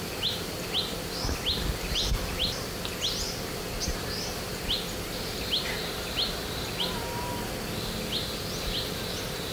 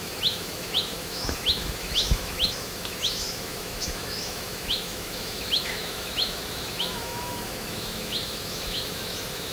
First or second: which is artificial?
second